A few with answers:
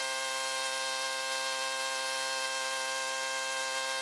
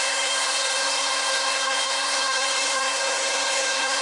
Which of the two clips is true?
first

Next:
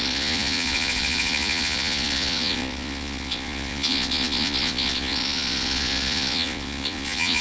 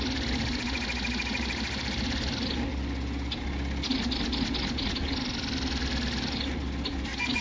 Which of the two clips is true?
second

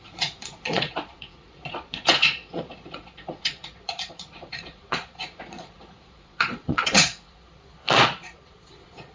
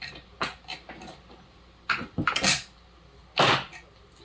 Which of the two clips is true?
second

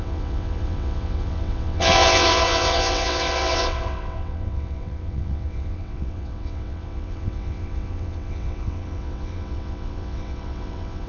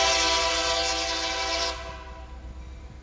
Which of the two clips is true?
second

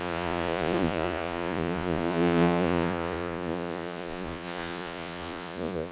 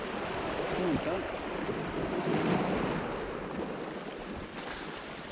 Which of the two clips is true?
second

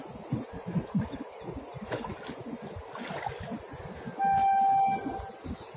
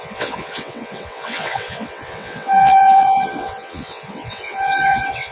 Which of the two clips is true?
first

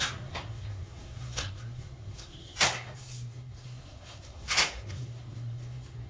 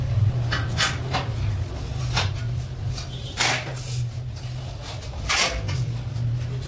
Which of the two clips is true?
second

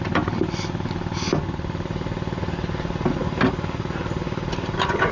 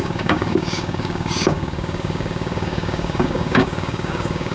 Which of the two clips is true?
first